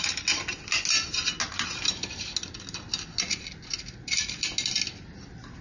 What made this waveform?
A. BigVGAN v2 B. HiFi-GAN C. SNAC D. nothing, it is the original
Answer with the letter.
D